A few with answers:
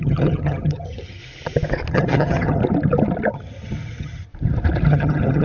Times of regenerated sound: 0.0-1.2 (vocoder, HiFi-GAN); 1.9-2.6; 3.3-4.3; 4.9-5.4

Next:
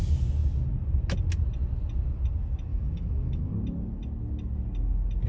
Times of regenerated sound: 2.7-3.5 (autoencoder, DAC-VAE)

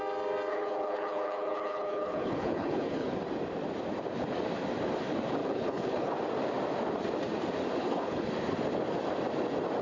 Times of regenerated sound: 0.5-3.2 (codec, HILCodec); 5.4-6.1; 7.8-8.3

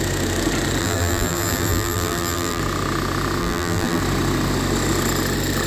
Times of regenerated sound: 0.8-2.6 (vocoder, BigVGAN v2); 3.4-4.0

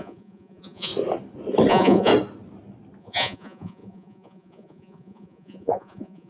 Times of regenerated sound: 0.0-0.9 (vocoder, Vocos); 1.7-2.1; 3.0-6.3

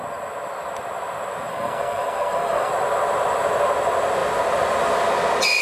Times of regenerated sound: 1.5-2.7 (codec, SNAC)

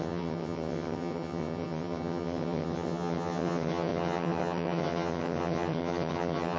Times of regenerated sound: 0.0-6.6 (vocoder, HiFi-GAN)